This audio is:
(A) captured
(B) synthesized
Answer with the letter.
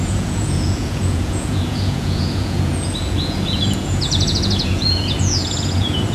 B